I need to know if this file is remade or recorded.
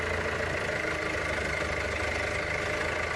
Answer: recorded